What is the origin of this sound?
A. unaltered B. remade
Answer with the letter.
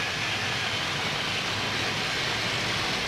A